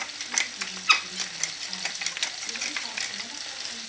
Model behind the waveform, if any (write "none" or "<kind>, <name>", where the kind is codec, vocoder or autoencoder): none